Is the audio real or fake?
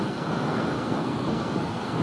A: fake